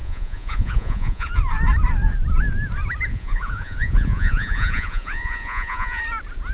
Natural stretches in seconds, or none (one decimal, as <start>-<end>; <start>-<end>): 1.3-3.1; 6.0-6.5